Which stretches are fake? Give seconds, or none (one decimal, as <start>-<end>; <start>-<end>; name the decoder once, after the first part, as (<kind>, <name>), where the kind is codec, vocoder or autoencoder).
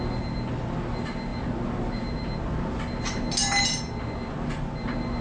none